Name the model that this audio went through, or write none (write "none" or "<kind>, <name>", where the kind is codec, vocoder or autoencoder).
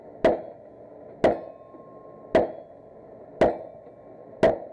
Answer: none